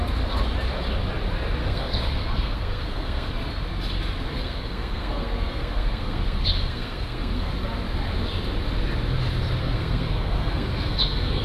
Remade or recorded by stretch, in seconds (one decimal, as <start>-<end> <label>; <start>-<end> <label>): 0.0-1.6 recorded; 1.6-3.3 remade; 3.3-4.3 recorded; 4.3-7.5 remade; 7.5-9.6 recorded; 9.6-11.4 remade